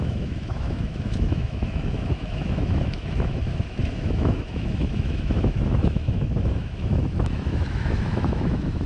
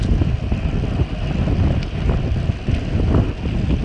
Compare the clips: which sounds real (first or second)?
second